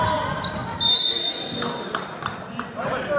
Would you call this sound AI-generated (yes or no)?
no